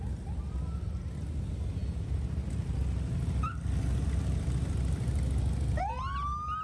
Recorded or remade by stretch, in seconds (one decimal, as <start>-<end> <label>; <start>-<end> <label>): 0.0-6.6 recorded